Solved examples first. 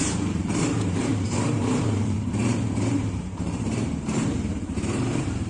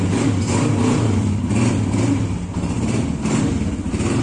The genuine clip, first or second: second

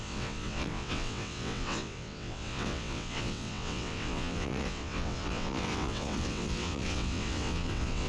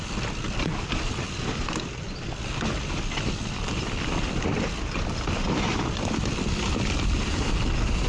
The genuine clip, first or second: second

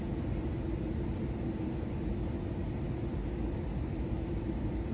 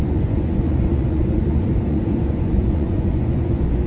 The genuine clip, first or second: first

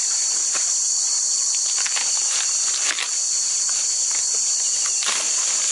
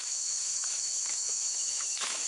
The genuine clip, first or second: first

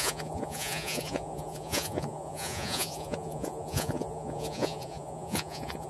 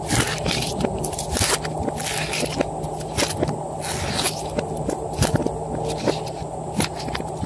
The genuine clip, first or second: second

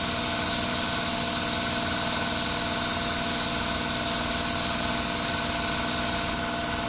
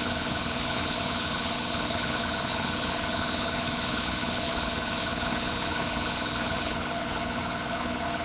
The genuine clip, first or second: first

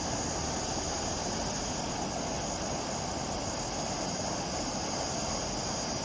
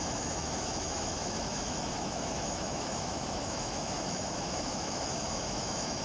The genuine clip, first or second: first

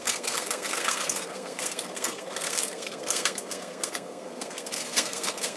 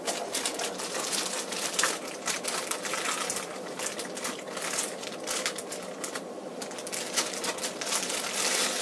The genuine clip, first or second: second